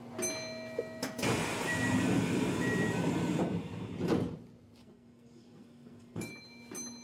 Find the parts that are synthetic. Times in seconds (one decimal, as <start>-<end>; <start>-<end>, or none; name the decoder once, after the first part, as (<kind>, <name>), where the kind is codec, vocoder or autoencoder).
4.8-6.3 (codec, SNAC)